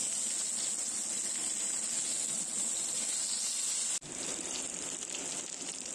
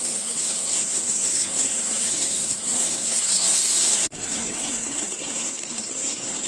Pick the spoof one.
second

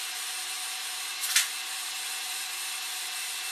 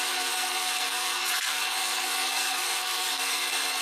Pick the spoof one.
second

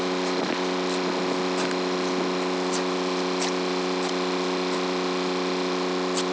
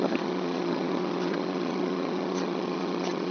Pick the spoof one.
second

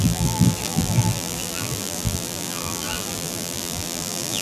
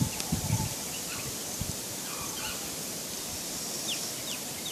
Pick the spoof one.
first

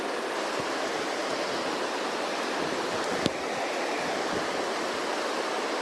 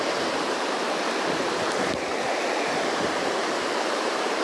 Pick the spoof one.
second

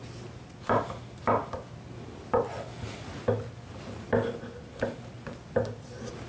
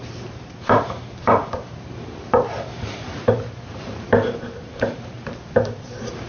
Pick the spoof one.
second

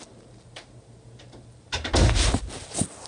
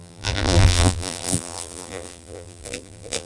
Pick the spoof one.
second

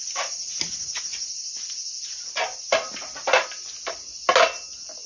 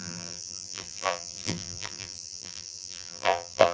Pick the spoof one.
second